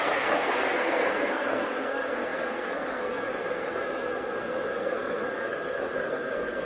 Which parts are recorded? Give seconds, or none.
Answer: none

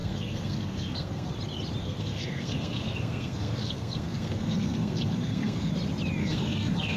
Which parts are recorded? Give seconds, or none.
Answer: 1.3-1.8; 5.7-6.2

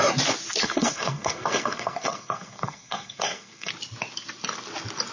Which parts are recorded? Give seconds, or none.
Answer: 0.0-0.6; 3.7-5.1

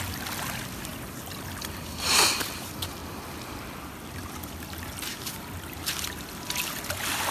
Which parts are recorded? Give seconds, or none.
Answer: 0.0-7.3

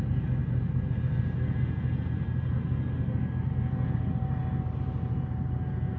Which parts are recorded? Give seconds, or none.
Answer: 0.0-6.0

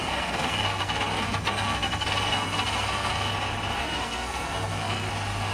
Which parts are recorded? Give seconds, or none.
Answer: 3.3-3.8; 5.1-5.5

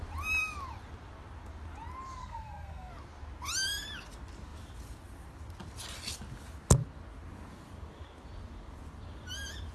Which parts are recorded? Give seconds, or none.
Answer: 0.0-2.2; 2.9-9.7

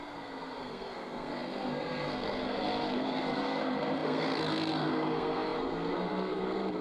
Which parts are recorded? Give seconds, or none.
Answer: none